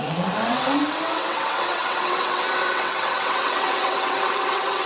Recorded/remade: remade